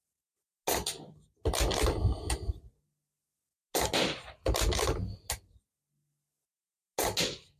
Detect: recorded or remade recorded